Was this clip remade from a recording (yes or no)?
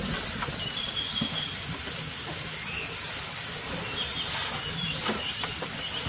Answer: no